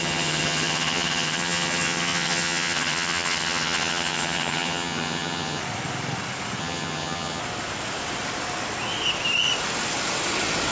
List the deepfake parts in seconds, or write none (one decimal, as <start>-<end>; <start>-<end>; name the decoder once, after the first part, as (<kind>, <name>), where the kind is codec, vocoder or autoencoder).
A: 0.0-5.6 (vocoder, HiFi-GAN); 6.6-7.4